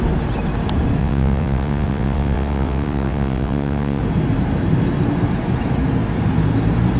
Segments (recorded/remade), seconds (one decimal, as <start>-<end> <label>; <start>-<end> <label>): 0.0-1.0 recorded; 1.0-4.0 remade; 4.0-7.0 recorded